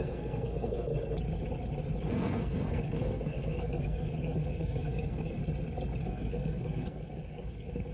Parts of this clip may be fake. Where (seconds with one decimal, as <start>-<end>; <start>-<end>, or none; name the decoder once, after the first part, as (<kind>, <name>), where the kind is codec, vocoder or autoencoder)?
0.0-0.9 (codec, SNAC); 2.1-5.4; 6.0-7.9